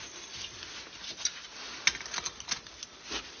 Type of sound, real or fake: real